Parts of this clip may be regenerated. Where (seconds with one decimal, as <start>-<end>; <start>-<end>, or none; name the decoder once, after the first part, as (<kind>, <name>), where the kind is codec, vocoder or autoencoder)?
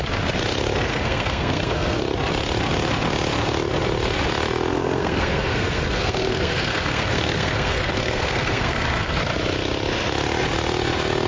0.9-2.0 (codec, SNAC); 4.7-9.1